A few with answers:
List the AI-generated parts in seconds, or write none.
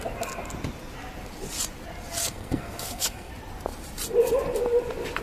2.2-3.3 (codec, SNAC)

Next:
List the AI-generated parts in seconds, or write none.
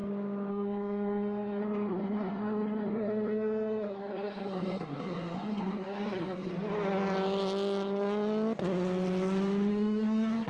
0.5-6.5 (codec, SNAC); 9.7-10.5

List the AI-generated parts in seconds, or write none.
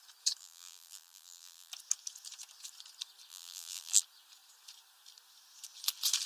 0.4-1.7 (vocoder, BigVGAN v2); 3.3-4.0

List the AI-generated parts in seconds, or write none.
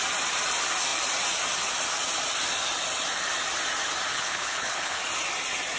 4.1-5.0 (codec, HILCodec)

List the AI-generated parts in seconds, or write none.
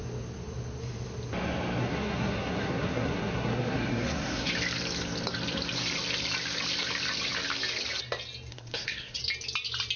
1.8-4.5 (codec, SNAC); 8.5-9.2